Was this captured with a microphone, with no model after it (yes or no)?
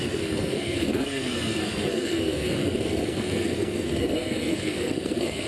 no